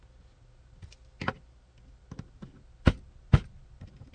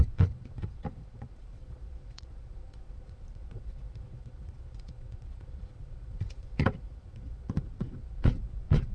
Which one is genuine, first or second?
first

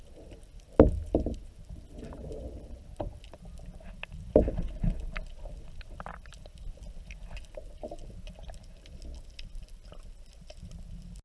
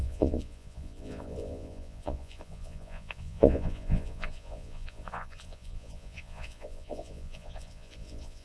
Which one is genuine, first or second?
first